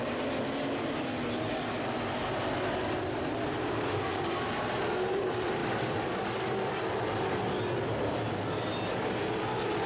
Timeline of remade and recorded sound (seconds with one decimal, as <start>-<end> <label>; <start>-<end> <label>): 0.0-4.1 recorded; 4.1-4.8 remade; 4.8-9.9 recorded